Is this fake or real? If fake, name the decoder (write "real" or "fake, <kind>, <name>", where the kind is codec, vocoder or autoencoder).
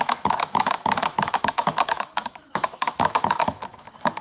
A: fake, autoencoder, DAC-VAE